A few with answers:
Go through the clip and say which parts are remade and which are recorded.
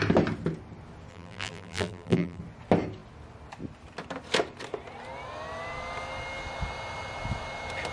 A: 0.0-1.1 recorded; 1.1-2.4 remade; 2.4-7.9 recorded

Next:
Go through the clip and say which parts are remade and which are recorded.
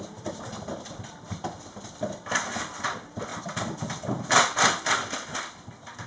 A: 0.0-3.3 remade; 3.3-4.3 recorded; 4.3-6.1 remade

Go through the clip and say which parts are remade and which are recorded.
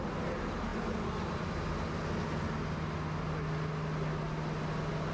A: 0.0-5.1 recorded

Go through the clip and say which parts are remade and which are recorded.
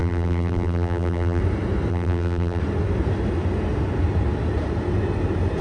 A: 0.0-1.4 remade; 1.4-1.9 recorded; 1.9-2.6 remade; 2.6-5.6 recorded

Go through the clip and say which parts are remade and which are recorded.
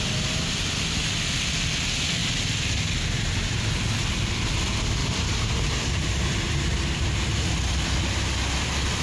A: 0.0-5.0 recorded; 5.0-7.7 remade; 7.7-9.0 recorded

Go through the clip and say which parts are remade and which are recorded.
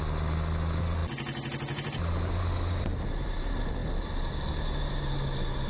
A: 0.0-5.7 recorded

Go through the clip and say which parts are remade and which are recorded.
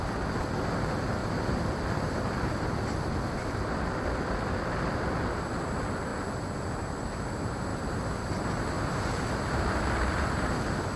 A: 0.0-1.2 recorded; 1.2-2.8 remade; 2.8-11.0 recorded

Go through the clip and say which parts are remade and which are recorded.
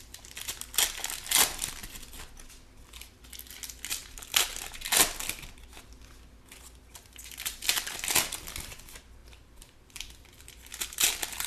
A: 0.0-4.0 recorded; 4.0-4.5 remade; 4.5-9.2 recorded; 9.2-10.7 remade; 10.7-11.5 recorded